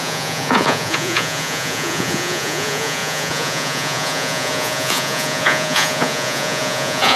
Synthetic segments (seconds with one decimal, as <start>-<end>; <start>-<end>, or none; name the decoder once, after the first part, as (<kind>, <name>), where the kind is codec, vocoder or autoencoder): 0.0-7.2 (vocoder, Vocos)